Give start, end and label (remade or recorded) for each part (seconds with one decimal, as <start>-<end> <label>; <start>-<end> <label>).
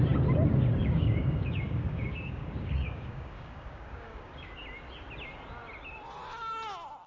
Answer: 0.0-0.8 recorded; 0.8-4.5 remade; 4.5-7.1 recorded